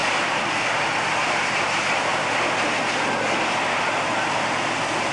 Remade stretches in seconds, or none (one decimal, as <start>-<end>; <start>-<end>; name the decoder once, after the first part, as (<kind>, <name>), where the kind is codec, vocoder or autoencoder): none